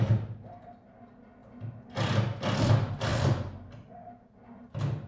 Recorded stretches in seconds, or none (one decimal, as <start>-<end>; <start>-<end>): 0.0-5.1